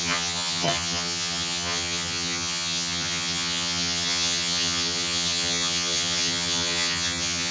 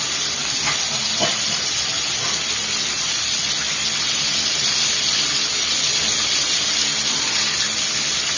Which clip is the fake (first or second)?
first